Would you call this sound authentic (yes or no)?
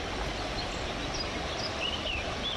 yes